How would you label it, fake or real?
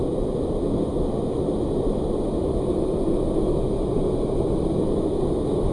real